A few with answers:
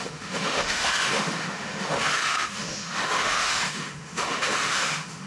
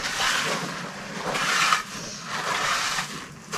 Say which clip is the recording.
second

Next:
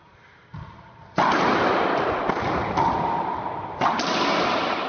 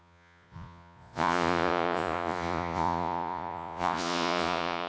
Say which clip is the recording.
first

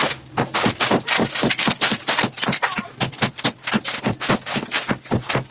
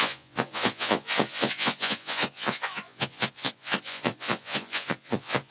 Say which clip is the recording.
first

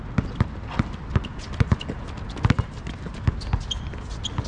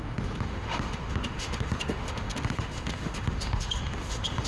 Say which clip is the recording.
first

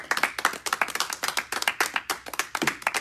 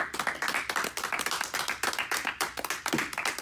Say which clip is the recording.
first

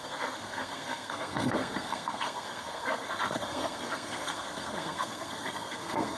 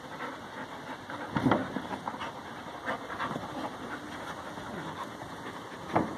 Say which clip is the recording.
second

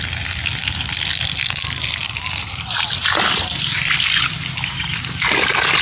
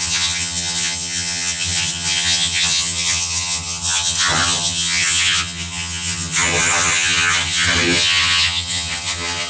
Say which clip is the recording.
first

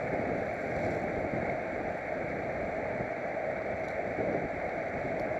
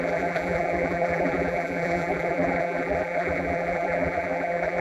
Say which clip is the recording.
first